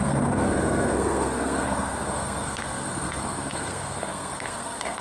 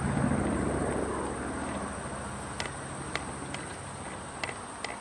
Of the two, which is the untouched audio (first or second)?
second